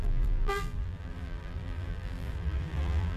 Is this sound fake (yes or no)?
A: yes